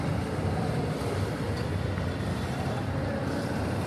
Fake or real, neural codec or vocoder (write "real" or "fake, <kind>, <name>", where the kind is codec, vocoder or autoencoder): real